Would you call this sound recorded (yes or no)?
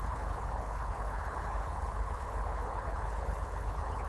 no